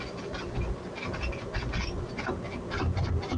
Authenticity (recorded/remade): recorded